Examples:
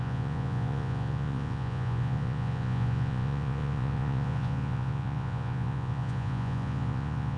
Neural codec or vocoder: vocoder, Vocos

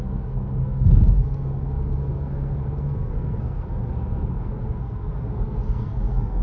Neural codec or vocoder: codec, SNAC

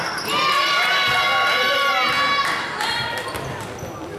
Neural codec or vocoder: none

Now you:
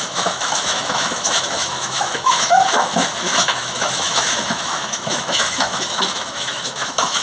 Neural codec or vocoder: autoencoder, DAC-VAE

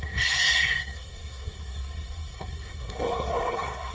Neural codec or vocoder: codec, SNAC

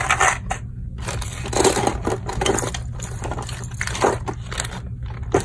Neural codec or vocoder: none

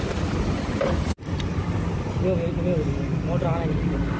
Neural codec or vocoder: none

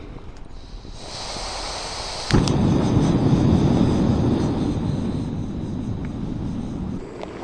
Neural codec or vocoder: none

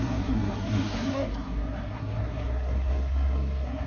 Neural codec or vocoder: codec, SNAC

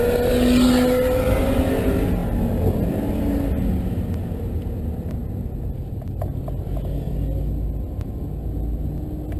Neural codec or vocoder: none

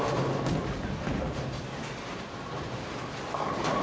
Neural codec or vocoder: none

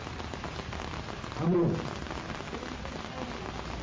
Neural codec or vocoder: none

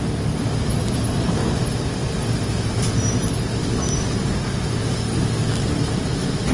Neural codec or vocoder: none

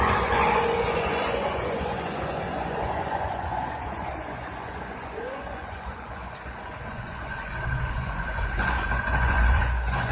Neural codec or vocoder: vocoder, Vocos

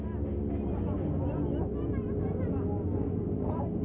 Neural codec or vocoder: none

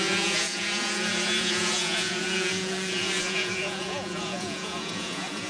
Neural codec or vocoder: vocoder, Vocos